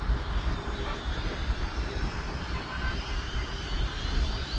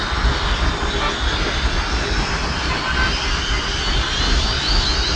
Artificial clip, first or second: first